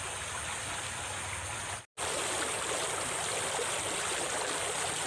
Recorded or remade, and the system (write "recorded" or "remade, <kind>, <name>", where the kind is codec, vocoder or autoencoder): recorded